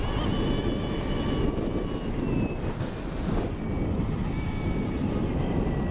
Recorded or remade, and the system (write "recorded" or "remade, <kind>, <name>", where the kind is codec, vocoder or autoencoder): recorded